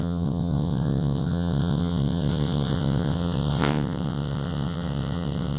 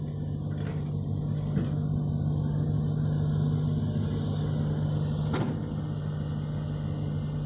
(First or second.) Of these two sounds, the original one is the second